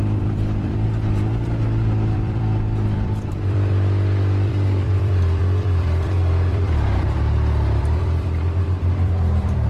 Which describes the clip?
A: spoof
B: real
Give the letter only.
A